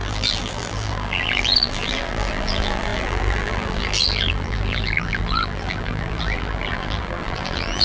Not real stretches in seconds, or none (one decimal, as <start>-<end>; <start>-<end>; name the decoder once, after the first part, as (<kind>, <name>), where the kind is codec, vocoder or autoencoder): 0.0-7.8 (vocoder, BigVGAN v2)

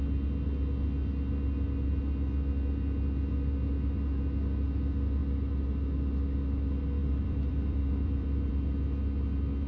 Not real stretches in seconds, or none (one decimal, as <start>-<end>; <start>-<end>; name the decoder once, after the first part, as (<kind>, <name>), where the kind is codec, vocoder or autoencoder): 5.2-5.7 (vocoder, BigVGAN v2); 7.0-8.5

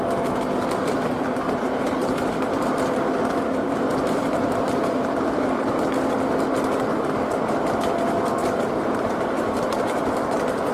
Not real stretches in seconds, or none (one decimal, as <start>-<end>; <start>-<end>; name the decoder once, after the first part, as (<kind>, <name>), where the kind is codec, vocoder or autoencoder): 2.0-5.9 (vocoder, BigVGAN v2); 8.4-10.0

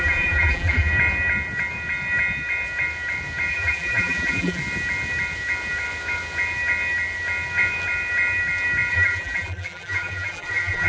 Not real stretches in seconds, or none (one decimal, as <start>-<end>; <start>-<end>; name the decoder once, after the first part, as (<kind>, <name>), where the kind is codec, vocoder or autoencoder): 0.0-0.9 (vocoder, BigVGAN v2); 3.5-4.6; 8.9-10.9

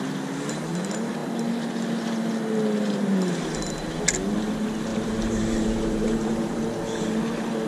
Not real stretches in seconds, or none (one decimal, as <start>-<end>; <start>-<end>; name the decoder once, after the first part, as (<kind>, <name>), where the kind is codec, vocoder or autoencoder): 4.9-6.6 (vocoder, BigVGAN v2)

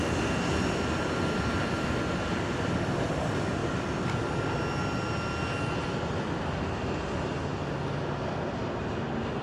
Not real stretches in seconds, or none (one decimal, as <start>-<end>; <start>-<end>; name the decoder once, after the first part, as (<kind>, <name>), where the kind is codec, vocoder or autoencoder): none

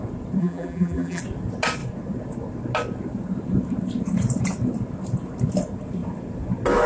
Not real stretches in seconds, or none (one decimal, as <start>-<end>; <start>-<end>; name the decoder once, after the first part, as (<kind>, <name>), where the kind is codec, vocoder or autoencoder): 0.4-1.2 (vocoder, BigVGAN v2)

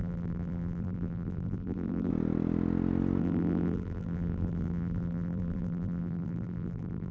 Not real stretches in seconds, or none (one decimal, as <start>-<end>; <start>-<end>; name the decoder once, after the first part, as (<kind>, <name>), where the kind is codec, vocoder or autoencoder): 0.0-2.1 (vocoder, BigVGAN v2); 3.2-7.1